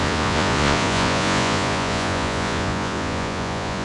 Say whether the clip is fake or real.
fake